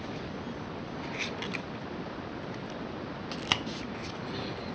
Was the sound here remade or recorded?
recorded